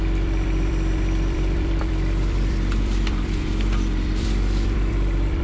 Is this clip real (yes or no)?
no